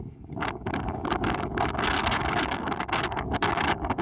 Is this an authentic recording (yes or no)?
no